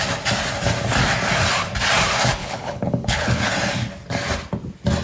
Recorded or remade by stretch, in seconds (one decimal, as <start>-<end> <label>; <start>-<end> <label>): 0.0-2.4 recorded; 2.4-3.5 remade; 3.5-5.0 recorded